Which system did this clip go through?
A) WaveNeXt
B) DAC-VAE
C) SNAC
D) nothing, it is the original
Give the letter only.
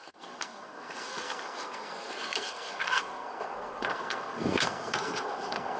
C